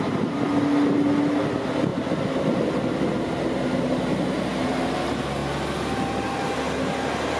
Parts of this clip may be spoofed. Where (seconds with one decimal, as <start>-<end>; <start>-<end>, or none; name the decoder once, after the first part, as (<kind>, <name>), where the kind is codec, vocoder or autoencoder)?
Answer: none